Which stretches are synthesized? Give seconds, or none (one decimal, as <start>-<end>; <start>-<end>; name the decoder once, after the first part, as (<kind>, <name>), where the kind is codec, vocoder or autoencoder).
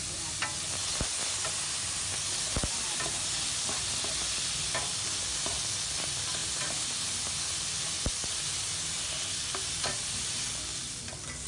none